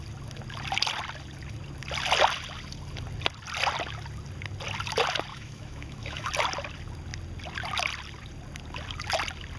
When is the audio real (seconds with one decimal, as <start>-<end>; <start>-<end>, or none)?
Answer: 0.0-5.3; 6.3-9.6